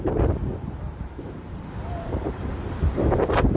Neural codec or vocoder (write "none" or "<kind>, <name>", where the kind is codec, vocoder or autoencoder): vocoder, BigVGAN v2